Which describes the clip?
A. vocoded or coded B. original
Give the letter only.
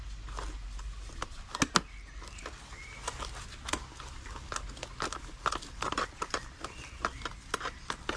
B